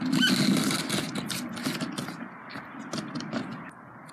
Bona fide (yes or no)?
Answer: yes